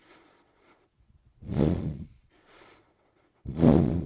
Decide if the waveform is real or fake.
fake